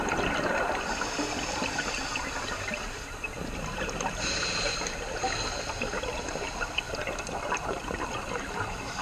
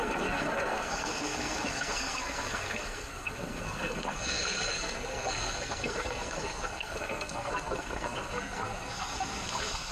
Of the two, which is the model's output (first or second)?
second